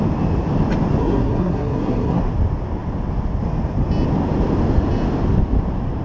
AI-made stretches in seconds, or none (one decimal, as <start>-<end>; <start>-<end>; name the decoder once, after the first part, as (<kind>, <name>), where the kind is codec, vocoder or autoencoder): 1.0-2.2 (codec, SNAC)